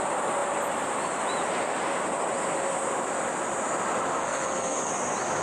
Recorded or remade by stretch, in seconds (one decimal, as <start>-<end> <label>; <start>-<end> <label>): 0.0-4.2 recorded; 4.2-4.9 remade; 4.9-5.4 recorded